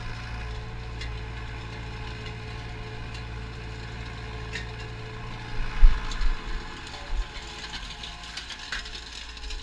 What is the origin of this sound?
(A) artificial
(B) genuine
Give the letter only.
B